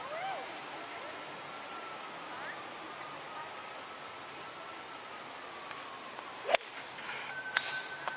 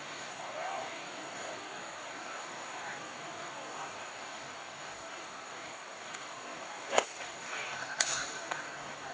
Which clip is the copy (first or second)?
second